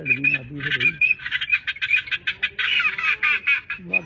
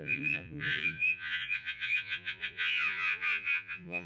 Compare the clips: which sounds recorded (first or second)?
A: first